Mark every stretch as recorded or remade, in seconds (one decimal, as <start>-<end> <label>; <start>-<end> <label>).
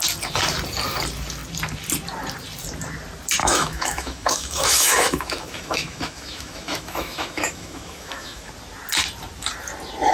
0.0-3.4 recorded; 3.4-8.5 remade; 8.5-10.1 recorded